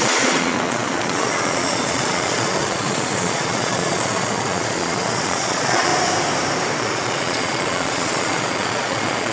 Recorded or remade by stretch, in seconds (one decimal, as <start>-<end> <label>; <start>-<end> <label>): 0.0-5.9 remade; 5.9-6.8 recorded; 6.8-9.3 remade